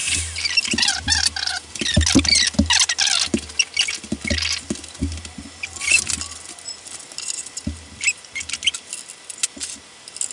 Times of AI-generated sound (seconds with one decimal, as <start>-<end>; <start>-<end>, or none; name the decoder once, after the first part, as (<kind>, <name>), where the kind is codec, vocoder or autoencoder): none